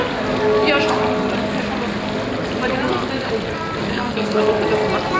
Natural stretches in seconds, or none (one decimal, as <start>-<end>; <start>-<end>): 0.0-3.9; 4.5-5.2